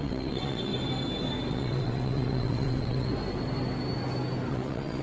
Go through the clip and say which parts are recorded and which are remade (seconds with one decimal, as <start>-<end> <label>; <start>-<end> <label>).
0.0-0.7 remade; 0.7-1.5 recorded; 1.5-3.1 remade; 3.1-4.5 recorded; 4.5-5.0 remade